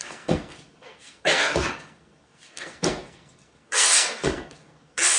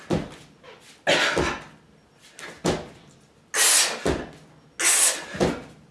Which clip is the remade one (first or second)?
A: first